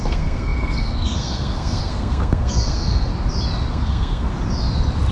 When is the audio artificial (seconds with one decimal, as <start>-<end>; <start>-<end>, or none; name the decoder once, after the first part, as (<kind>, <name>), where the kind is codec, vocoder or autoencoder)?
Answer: 0.0-3.1 (codec, SNAC); 3.7-4.3